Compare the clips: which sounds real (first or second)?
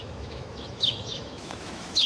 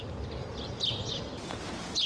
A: second